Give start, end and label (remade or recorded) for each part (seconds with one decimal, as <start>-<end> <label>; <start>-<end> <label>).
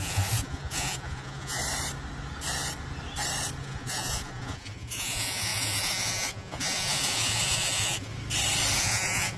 0.0-1.6 remade; 1.6-3.6 recorded; 3.6-8.1 remade; 8.1-8.8 recorded; 8.8-9.4 remade